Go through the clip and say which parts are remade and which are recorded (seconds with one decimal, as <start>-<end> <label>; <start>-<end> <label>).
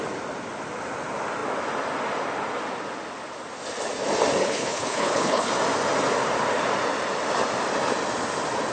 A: 0.0-4.4 recorded; 4.4-5.5 remade; 5.5-8.7 recorded